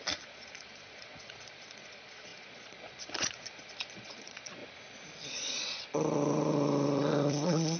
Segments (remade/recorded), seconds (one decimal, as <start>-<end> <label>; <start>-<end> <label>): 0.0-4.6 remade; 4.6-5.3 recorded; 5.3-7.8 remade